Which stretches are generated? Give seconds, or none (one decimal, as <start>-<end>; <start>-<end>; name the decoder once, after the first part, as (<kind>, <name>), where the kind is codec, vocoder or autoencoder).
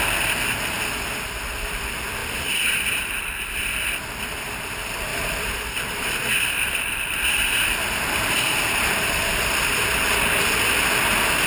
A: 2.2-4.3 (vocoder, BigVGAN v2); 5.1-9.8